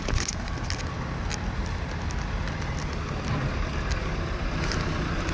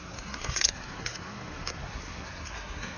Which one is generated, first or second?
second